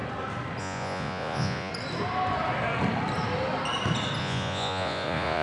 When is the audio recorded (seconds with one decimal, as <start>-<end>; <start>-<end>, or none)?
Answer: 0.0-0.6; 1.7-4.2